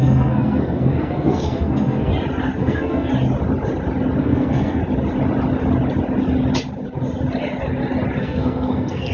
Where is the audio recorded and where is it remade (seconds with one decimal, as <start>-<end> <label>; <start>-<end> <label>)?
0.0-2.1 remade; 2.1-2.6 recorded; 2.6-3.1 remade; 3.1-4.2 recorded; 4.2-4.8 remade; 4.8-8.2 recorded; 8.2-9.1 remade